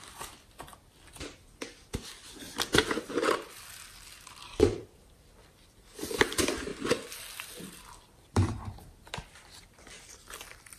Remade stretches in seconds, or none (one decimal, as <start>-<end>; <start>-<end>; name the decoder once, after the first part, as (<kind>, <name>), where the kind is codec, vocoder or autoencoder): 0.0-0.7 (vocoder, BigVGAN v2); 4.2-6.7; 7.6-10.8